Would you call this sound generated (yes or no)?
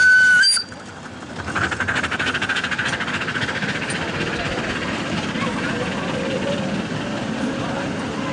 no